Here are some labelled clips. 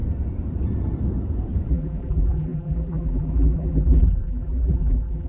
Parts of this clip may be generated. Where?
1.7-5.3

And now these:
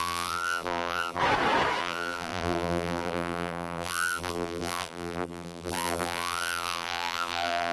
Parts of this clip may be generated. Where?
0.0-1.2; 1.8-7.7

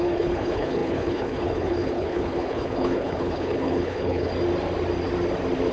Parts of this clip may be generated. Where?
0.0-4.3

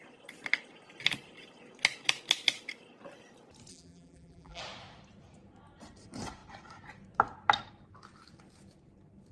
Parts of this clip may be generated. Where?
3.7-4.6

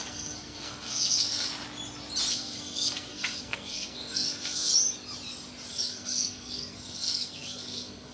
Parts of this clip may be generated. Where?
0.0-1.5; 2.3-4.7; 5.7-8.1

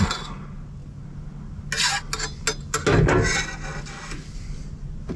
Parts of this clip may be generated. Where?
none

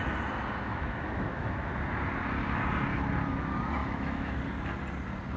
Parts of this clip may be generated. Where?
0.7-1.7; 3.8-4.4

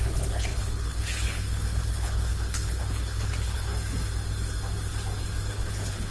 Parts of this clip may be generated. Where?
0.0-3.7; 5.5-6.1